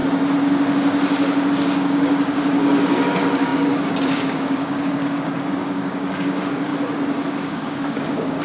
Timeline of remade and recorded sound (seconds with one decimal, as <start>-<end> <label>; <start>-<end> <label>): 0.0-1.5 recorded; 1.5-6.7 remade; 6.7-7.3 recorded; 7.3-8.4 remade